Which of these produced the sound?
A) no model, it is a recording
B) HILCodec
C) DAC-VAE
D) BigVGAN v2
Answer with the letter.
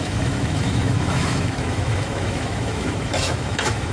C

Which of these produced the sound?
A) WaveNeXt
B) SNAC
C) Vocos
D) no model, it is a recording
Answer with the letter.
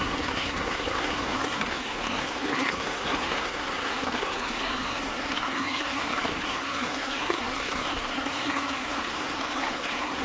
B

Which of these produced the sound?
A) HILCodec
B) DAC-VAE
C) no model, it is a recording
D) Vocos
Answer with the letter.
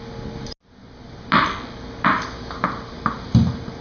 C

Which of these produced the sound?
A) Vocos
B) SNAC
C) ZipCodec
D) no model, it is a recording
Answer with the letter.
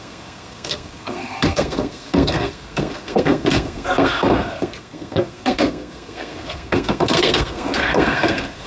B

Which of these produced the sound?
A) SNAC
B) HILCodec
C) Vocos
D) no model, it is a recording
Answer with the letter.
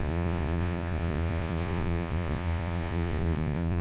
C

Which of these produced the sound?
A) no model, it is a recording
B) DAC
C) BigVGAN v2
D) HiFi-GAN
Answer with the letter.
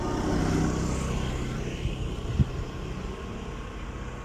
A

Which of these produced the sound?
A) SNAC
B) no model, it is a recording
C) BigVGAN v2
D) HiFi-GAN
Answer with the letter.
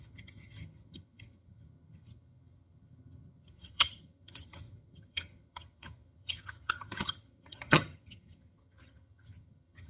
D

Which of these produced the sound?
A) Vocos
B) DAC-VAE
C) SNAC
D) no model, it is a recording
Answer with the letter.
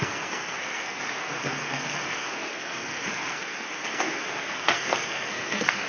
C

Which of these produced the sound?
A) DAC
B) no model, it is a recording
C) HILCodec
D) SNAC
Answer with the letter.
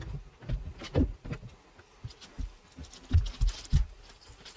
B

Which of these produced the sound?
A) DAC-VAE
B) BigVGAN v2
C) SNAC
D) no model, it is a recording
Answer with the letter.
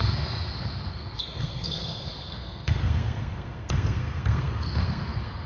C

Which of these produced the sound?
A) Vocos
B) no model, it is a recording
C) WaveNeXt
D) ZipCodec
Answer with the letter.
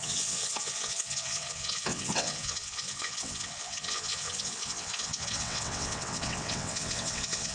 C